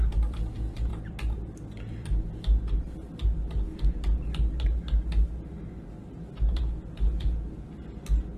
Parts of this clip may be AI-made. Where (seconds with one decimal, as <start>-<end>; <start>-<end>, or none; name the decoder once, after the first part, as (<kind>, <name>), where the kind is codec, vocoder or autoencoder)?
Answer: 0.0-3.2 (vocoder, BigVGAN v2)